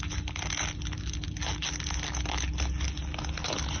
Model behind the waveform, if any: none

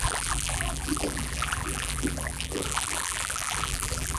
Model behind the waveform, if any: vocoder, BigVGAN v2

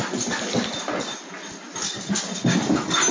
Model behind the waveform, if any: none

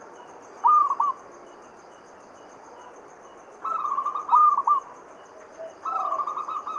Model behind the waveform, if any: none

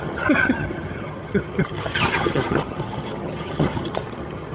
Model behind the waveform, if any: vocoder, HiFi-GAN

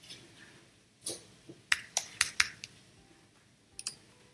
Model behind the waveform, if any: none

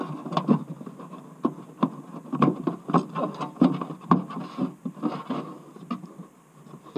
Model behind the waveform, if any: none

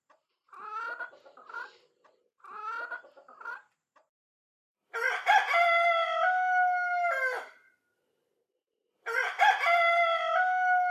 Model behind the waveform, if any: none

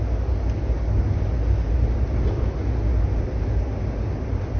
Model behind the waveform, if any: none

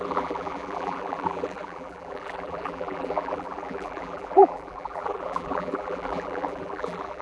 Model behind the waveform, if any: vocoder, BigVGAN v2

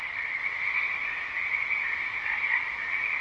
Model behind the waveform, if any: none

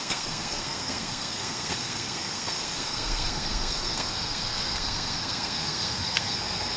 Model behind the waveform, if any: codec, SNAC